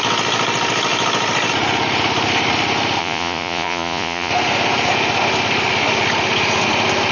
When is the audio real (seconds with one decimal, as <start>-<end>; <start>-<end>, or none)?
0.0-3.0; 4.3-7.1